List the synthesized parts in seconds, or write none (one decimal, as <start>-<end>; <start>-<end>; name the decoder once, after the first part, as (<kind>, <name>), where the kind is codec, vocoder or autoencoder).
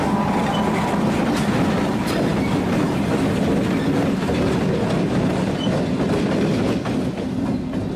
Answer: none